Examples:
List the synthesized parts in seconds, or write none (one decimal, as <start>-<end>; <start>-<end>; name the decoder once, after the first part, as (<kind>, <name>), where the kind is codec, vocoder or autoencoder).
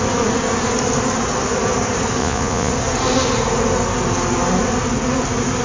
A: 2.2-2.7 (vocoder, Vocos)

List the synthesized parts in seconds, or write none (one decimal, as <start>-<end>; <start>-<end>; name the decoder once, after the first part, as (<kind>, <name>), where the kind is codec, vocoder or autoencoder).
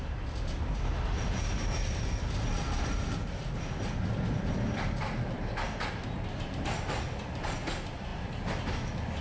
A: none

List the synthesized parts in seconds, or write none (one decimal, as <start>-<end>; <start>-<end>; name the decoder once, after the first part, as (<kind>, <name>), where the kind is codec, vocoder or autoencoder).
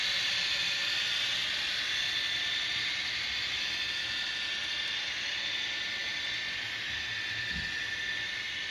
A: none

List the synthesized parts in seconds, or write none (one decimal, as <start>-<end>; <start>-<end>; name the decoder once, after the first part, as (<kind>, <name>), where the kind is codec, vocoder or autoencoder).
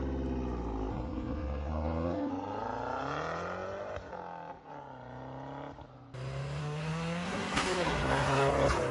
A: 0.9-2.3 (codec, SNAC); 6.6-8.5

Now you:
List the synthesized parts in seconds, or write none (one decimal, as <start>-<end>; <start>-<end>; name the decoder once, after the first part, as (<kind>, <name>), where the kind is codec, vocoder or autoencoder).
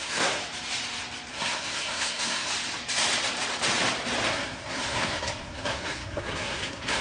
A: 0.0-0.4 (codec, SNAC); 1.3-2.5; 4.3-7.0